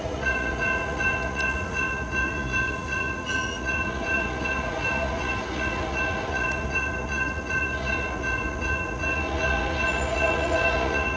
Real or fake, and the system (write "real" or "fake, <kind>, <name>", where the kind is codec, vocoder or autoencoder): fake, vocoder, Vocos